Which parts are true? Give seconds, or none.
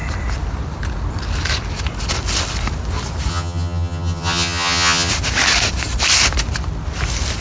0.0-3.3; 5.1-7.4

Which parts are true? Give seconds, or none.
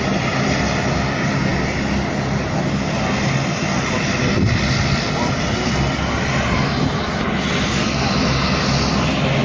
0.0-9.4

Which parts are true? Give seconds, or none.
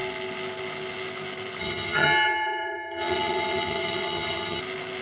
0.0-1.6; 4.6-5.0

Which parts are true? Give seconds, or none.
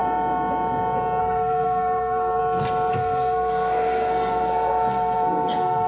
0.0-1.2; 2.4-2.9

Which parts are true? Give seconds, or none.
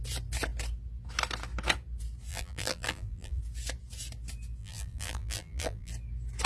0.0-2.3; 3.4-4.6; 5.9-6.5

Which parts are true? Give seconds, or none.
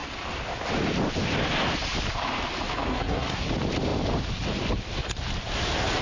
0.0-2.9; 3.5-6.0